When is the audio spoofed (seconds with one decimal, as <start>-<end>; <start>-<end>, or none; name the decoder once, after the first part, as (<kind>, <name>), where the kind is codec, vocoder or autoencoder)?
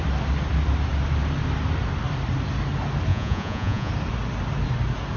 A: 3.1-3.9 (vocoder, Vocos)